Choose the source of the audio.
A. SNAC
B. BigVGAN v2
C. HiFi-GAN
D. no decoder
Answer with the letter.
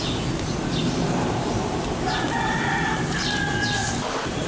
D